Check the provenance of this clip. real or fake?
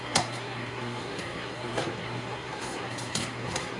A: fake